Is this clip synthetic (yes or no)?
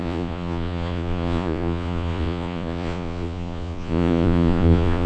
yes